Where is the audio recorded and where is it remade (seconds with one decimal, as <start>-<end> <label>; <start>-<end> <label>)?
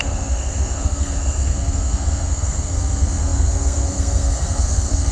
0.0-5.1 remade